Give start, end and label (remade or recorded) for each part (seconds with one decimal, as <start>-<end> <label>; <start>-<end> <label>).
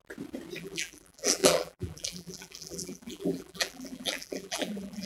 0.0-0.6 recorded; 0.6-5.1 remade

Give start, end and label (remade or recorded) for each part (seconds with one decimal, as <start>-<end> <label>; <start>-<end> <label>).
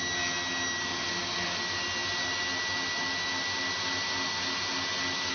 0.0-5.3 recorded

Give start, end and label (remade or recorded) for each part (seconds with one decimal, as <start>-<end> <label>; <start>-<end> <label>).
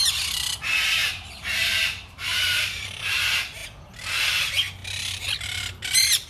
0.0-1.0 recorded; 1.0-3.2 remade; 3.2-6.3 recorded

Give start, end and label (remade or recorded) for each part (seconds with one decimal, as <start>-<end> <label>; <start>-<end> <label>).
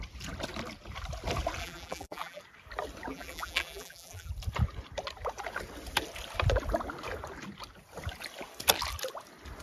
0.0-1.6 recorded; 1.6-2.4 remade; 2.4-3.1 recorded; 3.1-4.3 remade; 4.3-9.6 recorded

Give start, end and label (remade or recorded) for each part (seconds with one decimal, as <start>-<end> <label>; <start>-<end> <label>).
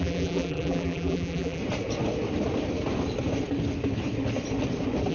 0.0-1.6 remade; 1.6-5.1 recorded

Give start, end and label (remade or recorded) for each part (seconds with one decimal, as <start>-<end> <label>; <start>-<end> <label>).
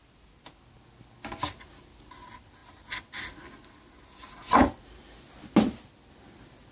0.0-6.7 recorded